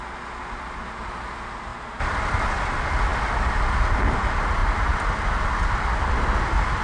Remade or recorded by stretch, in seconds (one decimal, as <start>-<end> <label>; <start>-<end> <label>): 0.0-6.8 recorded